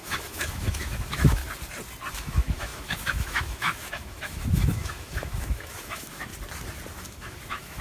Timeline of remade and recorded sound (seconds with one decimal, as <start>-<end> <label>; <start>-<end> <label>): 0.0-1.4 remade; 1.4-2.1 recorded; 2.1-6.3 remade; 6.3-7.0 recorded; 7.0-7.8 remade